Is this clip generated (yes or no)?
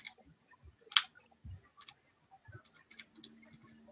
no